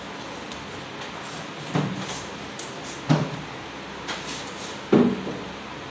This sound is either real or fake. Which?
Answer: real